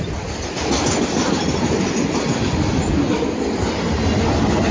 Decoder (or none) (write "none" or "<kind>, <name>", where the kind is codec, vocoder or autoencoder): none